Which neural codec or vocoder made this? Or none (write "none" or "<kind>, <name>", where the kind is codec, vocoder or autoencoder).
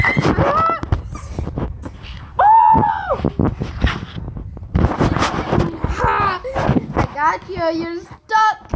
none